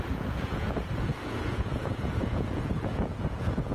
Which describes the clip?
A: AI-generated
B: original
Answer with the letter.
A